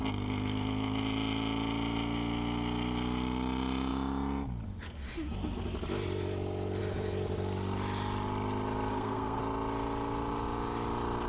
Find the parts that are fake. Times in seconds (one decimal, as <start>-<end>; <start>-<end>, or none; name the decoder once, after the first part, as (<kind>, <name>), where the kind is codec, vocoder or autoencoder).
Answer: 8.9-9.4 (codec, SNAC)